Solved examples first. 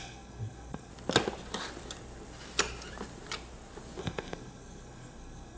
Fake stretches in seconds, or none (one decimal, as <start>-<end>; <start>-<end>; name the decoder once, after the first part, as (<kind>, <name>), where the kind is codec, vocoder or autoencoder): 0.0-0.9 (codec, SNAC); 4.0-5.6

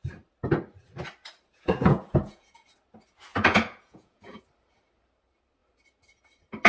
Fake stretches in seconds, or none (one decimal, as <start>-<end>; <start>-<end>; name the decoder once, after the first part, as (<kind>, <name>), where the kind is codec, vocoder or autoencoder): 1.5-2.7 (vocoder, Vocos); 3.3-4.4

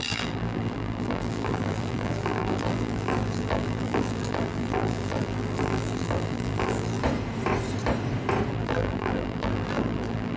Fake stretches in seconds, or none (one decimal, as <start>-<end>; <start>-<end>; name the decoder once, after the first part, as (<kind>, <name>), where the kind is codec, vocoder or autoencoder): 0.0-7.0 (vocoder, BigVGAN v2); 8.5-10.4

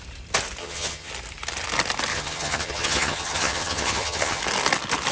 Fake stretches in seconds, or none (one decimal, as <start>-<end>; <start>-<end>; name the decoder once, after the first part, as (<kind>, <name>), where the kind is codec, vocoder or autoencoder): 0.6-1.1 (vocoder, HiFi-GAN); 2.1-4.4

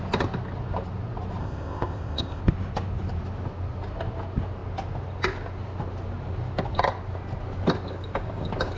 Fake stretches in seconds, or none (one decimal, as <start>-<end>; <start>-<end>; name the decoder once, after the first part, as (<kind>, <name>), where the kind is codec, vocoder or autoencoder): 1.4-2.4 (codec, ZipCodec)

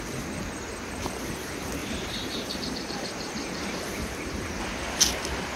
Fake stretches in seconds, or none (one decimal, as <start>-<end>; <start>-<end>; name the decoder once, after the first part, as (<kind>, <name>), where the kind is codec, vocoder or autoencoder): 1.8-4.6 (vocoder, BigVGAN v2)